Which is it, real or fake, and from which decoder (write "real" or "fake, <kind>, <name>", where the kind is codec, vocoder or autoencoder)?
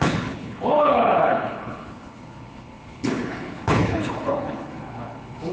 fake, codec, HILCodec